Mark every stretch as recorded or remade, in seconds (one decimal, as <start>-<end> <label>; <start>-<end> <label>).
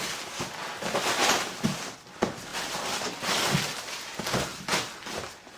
0.0-5.6 recorded